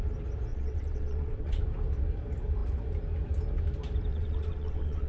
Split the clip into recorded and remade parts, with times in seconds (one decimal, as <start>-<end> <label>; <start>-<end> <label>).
0.0-0.5 recorded; 0.5-1.6 remade; 1.6-4.1 recorded; 4.1-5.1 remade